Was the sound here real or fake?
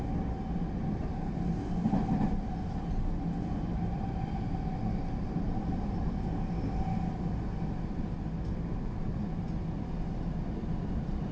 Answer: real